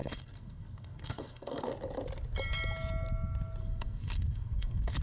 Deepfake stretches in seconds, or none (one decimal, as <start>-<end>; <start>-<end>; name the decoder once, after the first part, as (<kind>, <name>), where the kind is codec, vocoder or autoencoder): 0.0-1.7 (codec, SNAC); 3.6-5.0